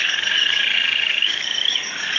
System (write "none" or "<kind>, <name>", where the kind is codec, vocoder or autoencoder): codec, DAC